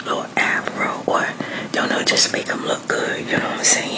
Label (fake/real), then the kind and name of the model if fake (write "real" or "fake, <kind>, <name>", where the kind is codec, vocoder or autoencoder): real